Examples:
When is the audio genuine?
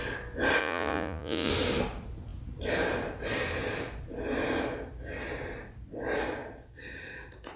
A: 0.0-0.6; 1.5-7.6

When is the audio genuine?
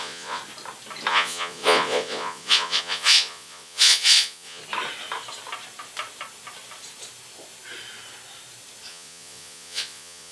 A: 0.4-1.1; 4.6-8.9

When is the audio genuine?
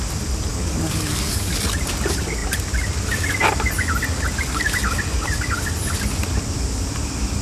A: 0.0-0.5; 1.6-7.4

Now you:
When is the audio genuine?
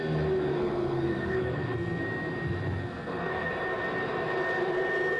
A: 0.0-0.5; 2.0-2.8; 3.5-5.2